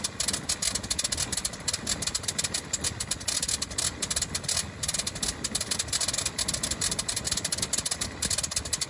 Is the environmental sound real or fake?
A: real